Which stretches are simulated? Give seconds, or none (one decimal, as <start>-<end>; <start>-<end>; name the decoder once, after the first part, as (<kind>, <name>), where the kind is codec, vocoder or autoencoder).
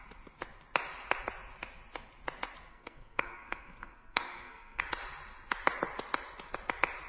2.7-4.8 (codec, SNAC)